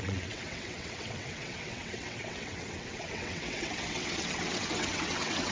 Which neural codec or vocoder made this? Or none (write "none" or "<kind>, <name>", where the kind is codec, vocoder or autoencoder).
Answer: vocoder, WaveNeXt